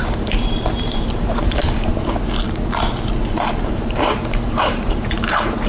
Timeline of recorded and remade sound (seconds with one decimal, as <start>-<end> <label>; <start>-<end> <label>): 0.0-1.9 remade; 1.9-3.4 recorded; 3.4-5.7 remade